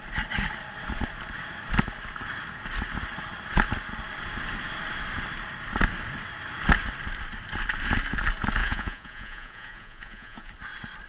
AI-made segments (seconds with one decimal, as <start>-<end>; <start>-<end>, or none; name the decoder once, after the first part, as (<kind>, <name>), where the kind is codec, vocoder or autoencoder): 8.6-10.5 (vocoder, Vocos)